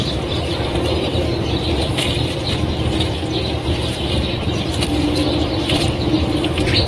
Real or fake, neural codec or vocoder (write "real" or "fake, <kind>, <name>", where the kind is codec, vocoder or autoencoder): real